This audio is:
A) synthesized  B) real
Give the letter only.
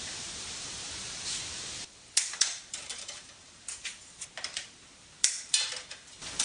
A